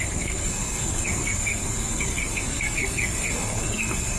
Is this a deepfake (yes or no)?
yes